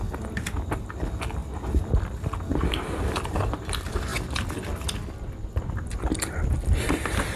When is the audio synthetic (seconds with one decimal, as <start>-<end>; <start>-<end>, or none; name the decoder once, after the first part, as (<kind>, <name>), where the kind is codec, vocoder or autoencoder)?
0.0-1.4 (vocoder, BigVGAN v2); 2.0-4.1; 5.7-7.4

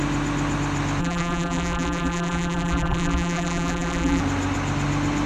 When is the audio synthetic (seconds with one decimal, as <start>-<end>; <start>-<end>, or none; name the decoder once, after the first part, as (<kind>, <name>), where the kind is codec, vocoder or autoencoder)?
1.0-4.2 (vocoder, BigVGAN v2)